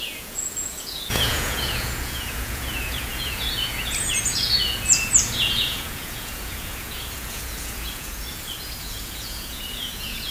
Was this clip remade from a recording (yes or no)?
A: yes